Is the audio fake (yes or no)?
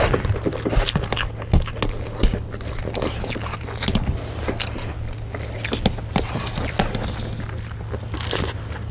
no